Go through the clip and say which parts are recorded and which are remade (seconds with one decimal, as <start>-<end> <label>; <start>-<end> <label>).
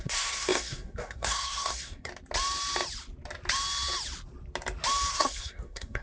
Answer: 0.0-2.1 remade; 2.1-5.1 recorded; 5.1-6.0 remade